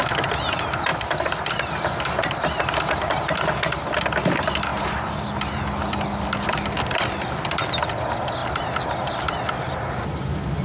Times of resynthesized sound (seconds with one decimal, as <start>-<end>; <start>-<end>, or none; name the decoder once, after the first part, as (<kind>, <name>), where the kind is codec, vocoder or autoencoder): 0.9-1.7 (vocoder, BigVGAN v2); 4.7-7.7; 8.4-9.1